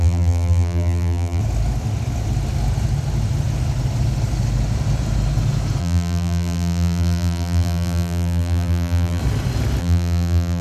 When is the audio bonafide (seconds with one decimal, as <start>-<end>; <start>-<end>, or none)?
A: 1.4-5.8; 9.2-9.8